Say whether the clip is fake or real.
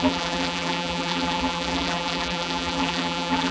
fake